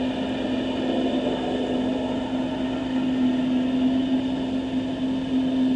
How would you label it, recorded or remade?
recorded